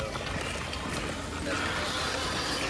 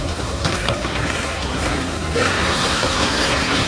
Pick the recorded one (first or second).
first